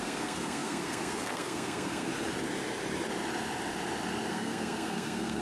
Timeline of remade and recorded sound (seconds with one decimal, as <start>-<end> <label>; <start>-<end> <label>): 0.0-2.1 remade; 2.1-4.3 recorded; 4.3-5.4 remade